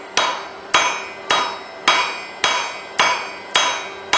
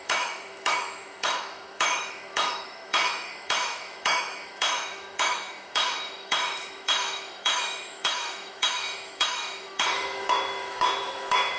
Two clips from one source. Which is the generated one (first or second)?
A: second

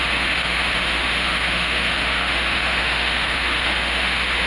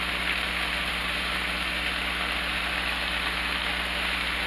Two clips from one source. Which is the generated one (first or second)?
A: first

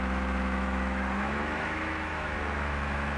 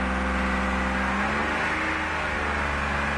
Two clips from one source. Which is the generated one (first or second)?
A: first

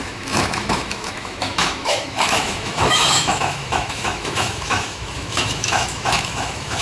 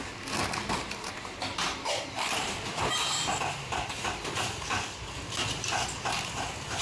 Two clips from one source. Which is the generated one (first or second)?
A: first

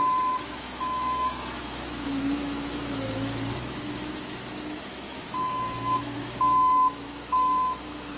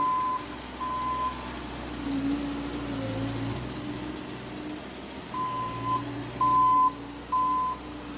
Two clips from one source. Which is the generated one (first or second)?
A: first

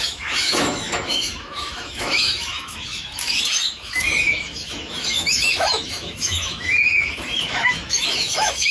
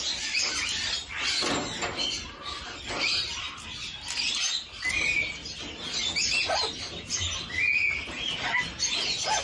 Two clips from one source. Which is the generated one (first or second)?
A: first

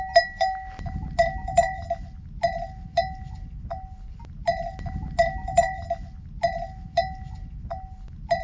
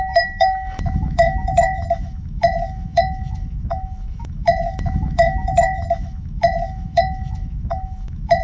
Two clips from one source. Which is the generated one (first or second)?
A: second